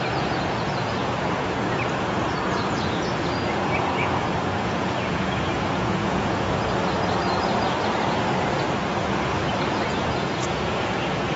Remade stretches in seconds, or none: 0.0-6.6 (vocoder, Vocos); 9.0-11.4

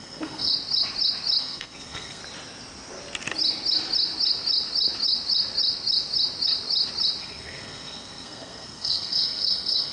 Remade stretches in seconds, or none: 0.0-0.5 (codec, SNAC); 1.4-2.2; 7.2-9.9

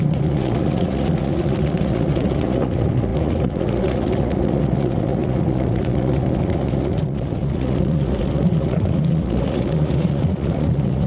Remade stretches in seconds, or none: 0.0-11.1 (vocoder, Vocos)

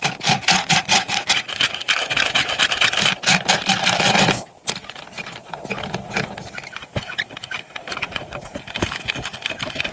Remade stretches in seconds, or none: 0.4-1.9 (vocoder, Vocos); 7.9-8.4

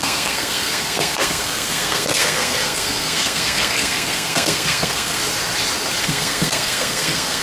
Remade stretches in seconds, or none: 0.0-5.2 (codec, SNAC); 6.0-7.4